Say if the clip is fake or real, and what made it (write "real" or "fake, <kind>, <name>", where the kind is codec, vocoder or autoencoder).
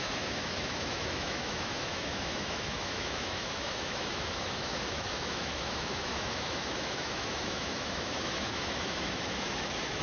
fake, autoencoder, DAC-VAE